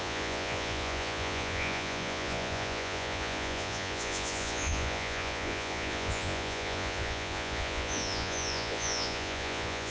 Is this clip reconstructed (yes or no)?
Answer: yes